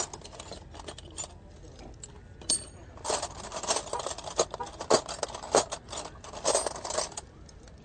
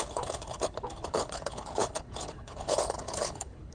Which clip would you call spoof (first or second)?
second